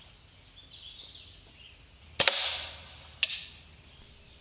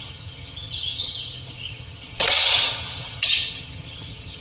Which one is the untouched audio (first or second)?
first